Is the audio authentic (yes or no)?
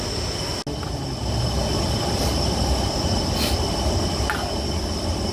yes